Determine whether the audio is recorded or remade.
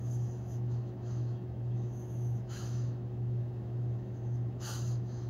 remade